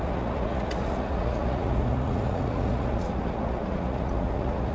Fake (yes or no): yes